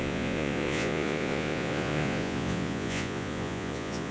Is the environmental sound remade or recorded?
remade